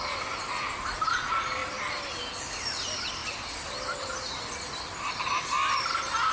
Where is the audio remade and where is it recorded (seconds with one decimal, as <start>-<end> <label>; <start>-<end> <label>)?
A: 0.0-1.6 recorded; 1.6-2.1 remade; 2.1-3.2 recorded; 3.2-6.3 remade